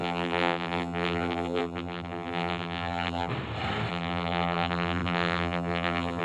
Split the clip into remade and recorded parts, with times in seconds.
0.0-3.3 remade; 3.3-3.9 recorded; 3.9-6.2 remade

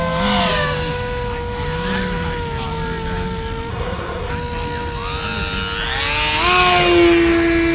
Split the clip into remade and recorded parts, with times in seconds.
0.0-3.7 recorded; 3.7-4.3 remade; 4.3-7.7 recorded

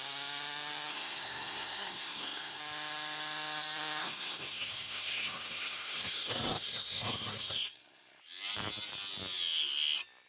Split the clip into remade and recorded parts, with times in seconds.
0.0-0.9 recorded; 0.9-2.6 remade; 2.6-4.0 recorded; 4.0-8.2 remade; 8.2-10.3 recorded

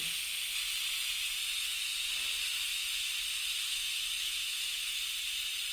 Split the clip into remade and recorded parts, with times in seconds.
0.0-3.7 recorded; 3.7-5.0 remade; 5.0-5.7 recorded

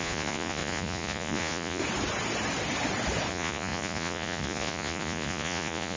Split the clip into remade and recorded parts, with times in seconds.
0.0-1.8 remade; 1.8-3.3 recorded; 3.3-6.0 remade

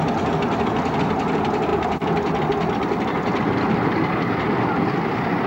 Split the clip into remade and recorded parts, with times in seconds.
0.0-5.5 recorded

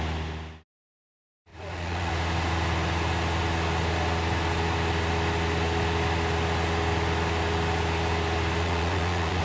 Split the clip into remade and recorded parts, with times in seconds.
0.0-1.5 recorded; 1.5-2.1 remade; 2.1-8.6 recorded; 8.6-9.4 remade

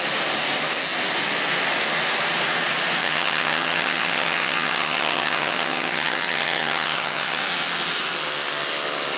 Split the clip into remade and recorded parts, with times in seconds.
0.0-3.0 recorded; 3.0-7.4 remade; 7.4-9.2 recorded